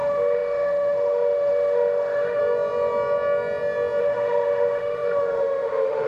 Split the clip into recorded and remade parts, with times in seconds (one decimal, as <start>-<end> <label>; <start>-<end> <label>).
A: 0.0-2.4 remade; 2.4-4.0 recorded; 4.0-6.1 remade